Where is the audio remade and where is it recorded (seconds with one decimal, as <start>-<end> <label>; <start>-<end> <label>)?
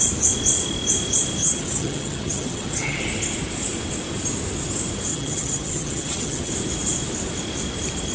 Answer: 0.0-1.4 recorded; 1.4-3.0 remade; 3.0-5.1 recorded; 5.1-6.5 remade; 6.5-8.1 recorded